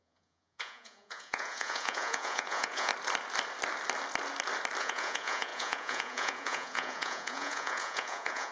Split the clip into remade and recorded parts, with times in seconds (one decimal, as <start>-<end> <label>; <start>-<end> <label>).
0.0-2.9 remade; 2.9-4.8 recorded; 4.8-8.5 remade